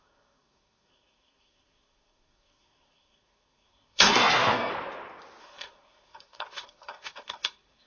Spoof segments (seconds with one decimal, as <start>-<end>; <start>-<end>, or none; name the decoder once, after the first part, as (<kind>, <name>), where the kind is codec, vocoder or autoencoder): 0.0-4.7 (codec, SNAC); 5.4-7.9